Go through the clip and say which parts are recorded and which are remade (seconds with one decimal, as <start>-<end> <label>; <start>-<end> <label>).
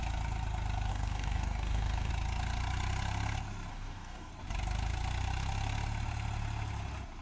0.0-0.9 recorded; 0.9-2.1 remade; 2.1-3.7 recorded; 3.7-4.3 remade; 4.3-7.2 recorded